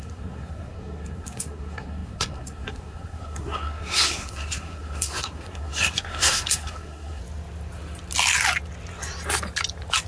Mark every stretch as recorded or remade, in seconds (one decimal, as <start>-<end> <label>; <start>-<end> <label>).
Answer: 0.0-7.2 remade; 7.2-10.1 recorded